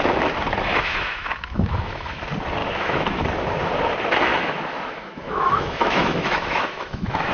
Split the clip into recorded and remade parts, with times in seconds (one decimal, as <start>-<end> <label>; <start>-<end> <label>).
0.0-0.7 recorded; 0.7-2.2 remade; 2.2-2.6 recorded; 2.6-3.2 remade; 3.2-4.3 recorded; 4.3-7.3 remade

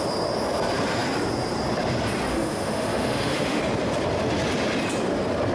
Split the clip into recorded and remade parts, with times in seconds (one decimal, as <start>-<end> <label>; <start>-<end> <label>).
0.0-2.3 recorded; 2.3-3.6 remade; 3.6-5.5 recorded

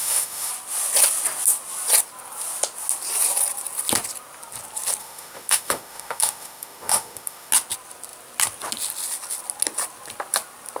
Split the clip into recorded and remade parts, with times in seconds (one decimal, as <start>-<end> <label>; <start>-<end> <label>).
0.0-0.5 remade; 0.5-5.0 recorded; 5.0-7.5 remade; 7.5-10.8 recorded

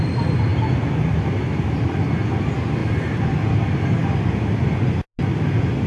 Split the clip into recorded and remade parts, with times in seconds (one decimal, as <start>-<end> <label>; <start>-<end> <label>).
0.0-5.9 recorded

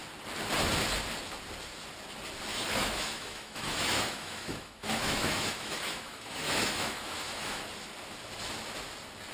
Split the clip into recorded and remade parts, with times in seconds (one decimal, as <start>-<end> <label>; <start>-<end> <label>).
0.0-2.5 recorded; 2.5-7.6 remade; 7.6-9.3 recorded

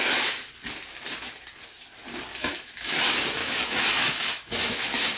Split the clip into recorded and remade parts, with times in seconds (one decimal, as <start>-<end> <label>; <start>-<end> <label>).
0.0-2.3 recorded; 2.3-2.9 remade; 2.9-3.4 recorded; 3.4-5.2 remade

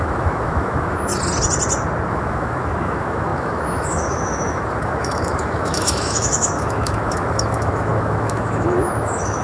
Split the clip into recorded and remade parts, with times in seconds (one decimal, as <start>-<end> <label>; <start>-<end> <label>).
0.0-1.1 remade; 1.1-2.1 recorded; 2.1-9.4 remade

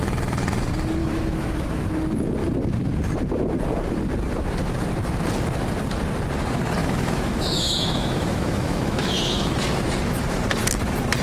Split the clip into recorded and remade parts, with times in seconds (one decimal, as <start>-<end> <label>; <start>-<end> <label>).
0.0-1.0 recorded; 1.0-1.9 remade; 1.9-6.8 recorded; 6.8-9.5 remade; 9.5-11.2 recorded